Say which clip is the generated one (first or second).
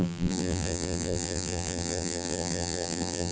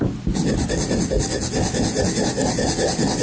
first